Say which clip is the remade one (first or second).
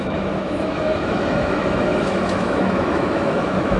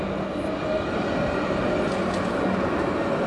first